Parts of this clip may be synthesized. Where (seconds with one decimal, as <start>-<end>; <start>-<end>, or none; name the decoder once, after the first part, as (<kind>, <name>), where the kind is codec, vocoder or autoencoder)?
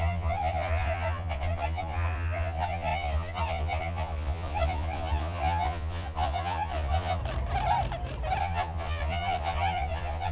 0.0-7.2 (vocoder, Vocos); 8.4-10.3